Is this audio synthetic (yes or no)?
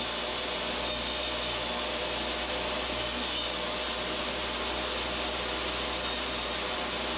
no